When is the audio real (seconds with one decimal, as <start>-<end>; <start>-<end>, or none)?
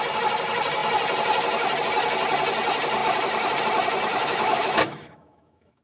0.0-4.1